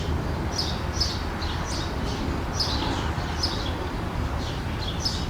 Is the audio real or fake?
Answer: real